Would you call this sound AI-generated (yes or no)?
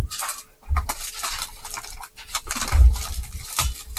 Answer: yes